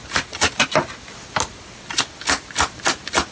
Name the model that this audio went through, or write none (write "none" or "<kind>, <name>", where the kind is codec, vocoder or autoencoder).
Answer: none